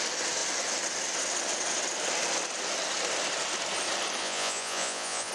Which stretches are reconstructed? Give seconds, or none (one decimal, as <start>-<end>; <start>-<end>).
4.2-5.3